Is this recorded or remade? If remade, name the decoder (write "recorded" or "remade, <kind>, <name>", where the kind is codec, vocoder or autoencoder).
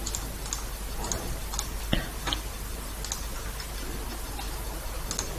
recorded